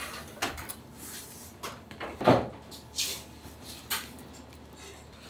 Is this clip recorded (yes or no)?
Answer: yes